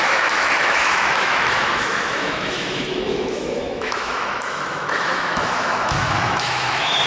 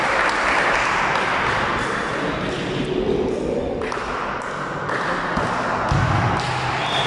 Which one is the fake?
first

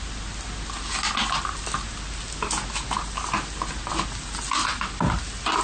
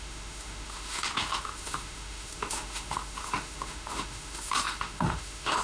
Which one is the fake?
second